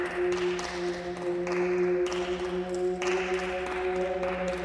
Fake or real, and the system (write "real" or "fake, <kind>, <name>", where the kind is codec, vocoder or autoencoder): real